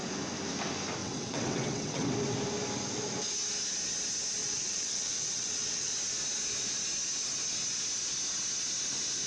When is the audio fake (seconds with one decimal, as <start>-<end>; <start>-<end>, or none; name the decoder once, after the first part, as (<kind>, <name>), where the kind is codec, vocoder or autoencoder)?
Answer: 1.0-2.1 (vocoder, WaveNeXt); 4.4-5.9